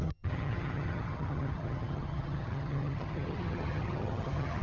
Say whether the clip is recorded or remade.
remade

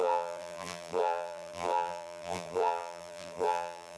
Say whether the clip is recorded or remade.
remade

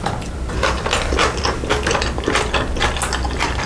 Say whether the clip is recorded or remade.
recorded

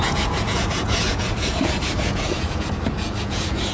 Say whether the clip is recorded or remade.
remade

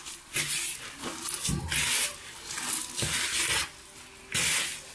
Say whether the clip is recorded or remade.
recorded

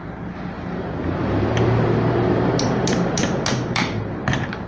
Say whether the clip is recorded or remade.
remade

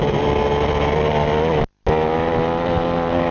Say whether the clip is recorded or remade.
recorded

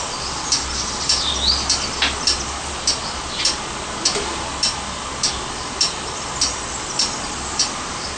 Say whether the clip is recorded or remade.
recorded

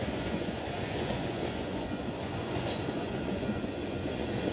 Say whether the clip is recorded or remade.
remade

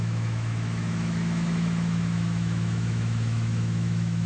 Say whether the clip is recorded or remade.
remade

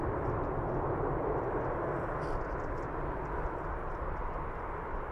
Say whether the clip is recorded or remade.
recorded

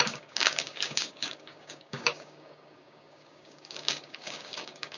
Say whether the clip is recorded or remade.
remade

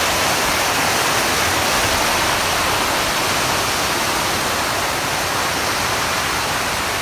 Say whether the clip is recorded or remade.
recorded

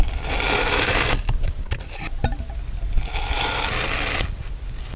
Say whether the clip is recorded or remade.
recorded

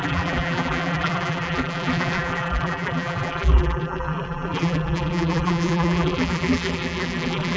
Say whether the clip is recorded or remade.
remade